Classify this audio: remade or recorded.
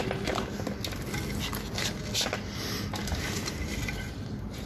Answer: recorded